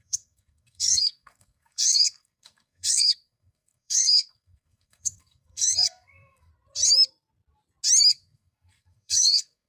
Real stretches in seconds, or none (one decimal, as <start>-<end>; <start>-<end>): 6.5-8.1